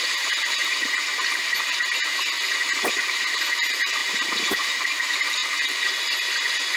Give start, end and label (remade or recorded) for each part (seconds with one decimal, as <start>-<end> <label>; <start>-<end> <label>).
0.0-0.6 remade; 0.6-2.9 recorded; 2.9-5.4 remade; 5.4-6.8 recorded